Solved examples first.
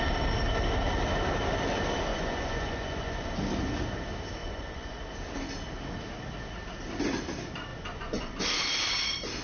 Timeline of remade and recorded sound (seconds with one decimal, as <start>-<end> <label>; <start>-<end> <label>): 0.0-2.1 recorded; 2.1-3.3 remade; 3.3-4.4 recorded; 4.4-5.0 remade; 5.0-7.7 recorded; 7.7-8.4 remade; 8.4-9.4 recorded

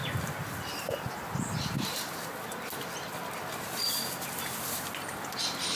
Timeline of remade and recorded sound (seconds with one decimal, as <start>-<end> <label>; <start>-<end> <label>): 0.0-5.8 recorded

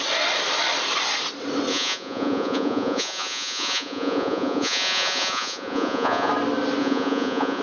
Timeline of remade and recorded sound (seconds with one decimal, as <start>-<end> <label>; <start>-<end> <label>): 0.0-1.7 recorded; 1.7-6.3 remade; 6.3-6.8 recorded; 6.8-7.6 remade

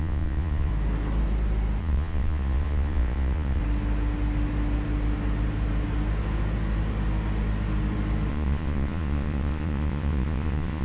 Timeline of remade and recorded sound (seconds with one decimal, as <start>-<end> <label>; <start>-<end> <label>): 0.0-0.7 remade; 0.7-1.8 recorded; 1.8-3.6 remade; 3.6-8.3 recorded; 8.3-10.8 remade